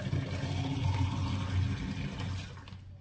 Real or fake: real